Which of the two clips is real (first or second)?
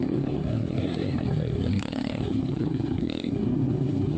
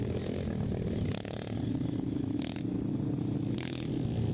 second